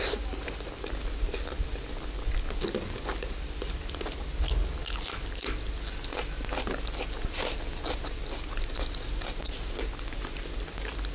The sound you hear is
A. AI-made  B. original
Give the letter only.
B